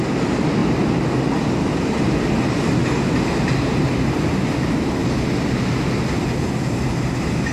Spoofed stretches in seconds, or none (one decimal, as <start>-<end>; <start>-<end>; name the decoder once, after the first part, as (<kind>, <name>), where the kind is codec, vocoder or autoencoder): none